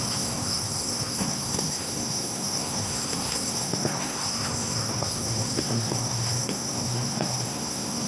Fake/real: fake